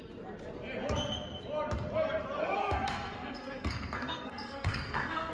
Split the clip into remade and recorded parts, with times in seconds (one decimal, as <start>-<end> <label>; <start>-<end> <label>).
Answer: 0.0-2.4 recorded; 2.4-5.3 remade

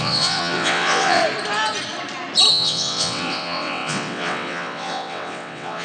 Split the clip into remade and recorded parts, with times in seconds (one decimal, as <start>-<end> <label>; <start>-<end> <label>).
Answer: 0.0-1.2 remade; 1.2-2.5 recorded; 2.5-5.8 remade